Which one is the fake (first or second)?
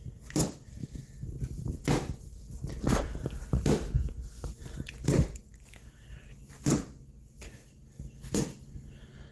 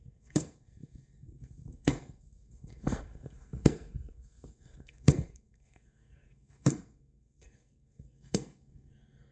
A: second